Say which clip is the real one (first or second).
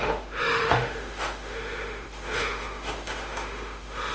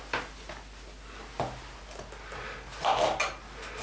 second